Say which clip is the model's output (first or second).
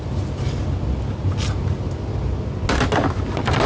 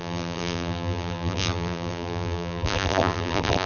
second